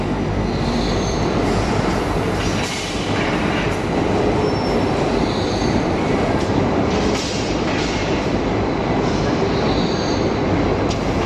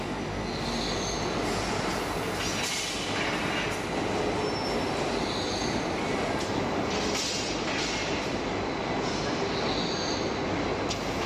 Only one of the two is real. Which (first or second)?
second